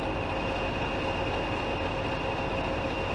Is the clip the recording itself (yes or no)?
yes